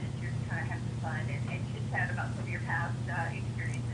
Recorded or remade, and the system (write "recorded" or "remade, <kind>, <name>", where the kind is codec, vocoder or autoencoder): remade, vocoder, BigVGAN v2